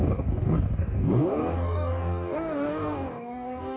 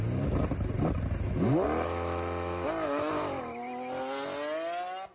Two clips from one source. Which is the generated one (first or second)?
first